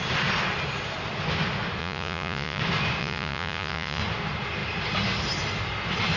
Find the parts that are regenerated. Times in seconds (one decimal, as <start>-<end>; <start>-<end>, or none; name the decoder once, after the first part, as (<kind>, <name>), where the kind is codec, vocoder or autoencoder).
1.8-2.6 (vocoder, Vocos); 3.0-4.0